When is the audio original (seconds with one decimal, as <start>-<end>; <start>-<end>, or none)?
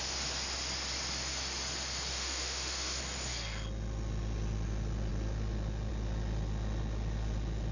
0.0-2.1; 3.0-7.7